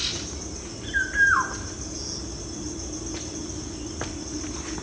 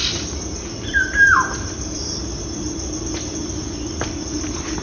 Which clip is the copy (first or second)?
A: second